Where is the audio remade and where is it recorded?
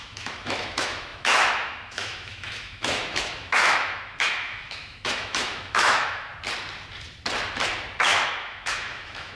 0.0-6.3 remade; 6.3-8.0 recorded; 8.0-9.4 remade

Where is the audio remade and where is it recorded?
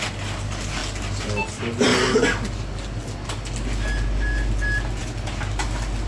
0.0-6.1 recorded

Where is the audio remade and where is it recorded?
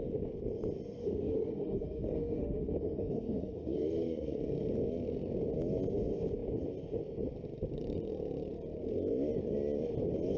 0.0-1.0 recorded; 1.0-4.4 remade; 4.4-10.4 recorded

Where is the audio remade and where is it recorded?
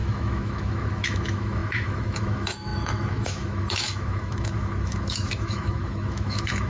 0.0-6.7 remade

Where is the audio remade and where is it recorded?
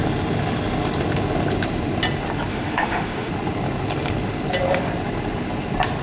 0.0-2.5 recorded; 2.5-3.3 remade; 3.3-6.0 recorded